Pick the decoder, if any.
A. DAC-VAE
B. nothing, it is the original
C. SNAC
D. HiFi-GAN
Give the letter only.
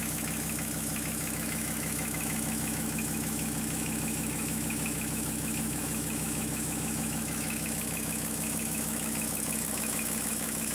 A